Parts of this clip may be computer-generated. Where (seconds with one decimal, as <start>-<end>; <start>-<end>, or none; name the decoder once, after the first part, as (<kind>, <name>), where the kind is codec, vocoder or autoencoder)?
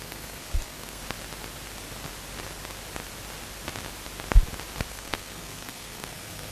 0.0-1.0 (codec, SNAC); 4.9-6.5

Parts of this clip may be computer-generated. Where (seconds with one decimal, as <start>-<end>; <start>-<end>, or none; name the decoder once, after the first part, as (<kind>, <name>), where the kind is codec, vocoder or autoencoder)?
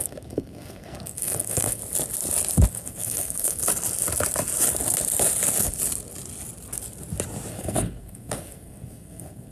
0.0-1.8 (codec, SNAC); 2.7-3.6; 7.5-9.5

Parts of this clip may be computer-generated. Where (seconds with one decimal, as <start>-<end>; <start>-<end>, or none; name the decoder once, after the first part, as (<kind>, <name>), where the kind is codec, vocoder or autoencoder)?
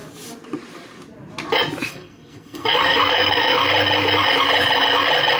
1.9-3.6 (codec, SNAC)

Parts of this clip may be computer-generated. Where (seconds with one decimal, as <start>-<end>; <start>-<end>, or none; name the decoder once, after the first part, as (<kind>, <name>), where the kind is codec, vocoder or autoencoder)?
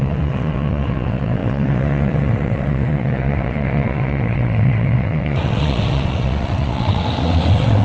0.0-7.8 (vocoder, WaveNeXt)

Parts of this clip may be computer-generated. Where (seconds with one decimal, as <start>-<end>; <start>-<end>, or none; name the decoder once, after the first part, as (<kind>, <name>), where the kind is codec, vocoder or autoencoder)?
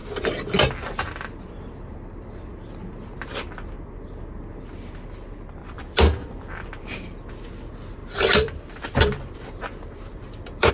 5.6-7.3 (vocoder, BigVGAN v2); 8.0-10.7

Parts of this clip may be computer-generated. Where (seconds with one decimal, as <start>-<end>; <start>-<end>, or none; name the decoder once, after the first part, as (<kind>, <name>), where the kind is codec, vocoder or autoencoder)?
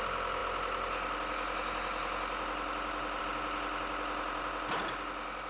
none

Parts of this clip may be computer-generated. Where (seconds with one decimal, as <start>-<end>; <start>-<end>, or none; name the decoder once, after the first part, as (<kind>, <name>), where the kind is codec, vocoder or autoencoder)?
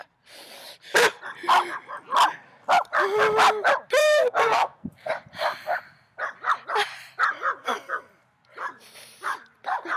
4.0-5.1 (codec, SNAC); 7.6-8.1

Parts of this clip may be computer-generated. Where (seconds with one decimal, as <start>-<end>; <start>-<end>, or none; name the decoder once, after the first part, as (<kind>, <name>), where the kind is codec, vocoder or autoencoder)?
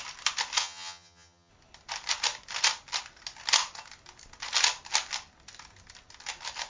0.6-1.5 (vocoder, HiFi-GAN)